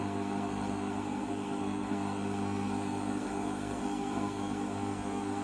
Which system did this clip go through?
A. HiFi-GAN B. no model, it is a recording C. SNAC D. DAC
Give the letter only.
C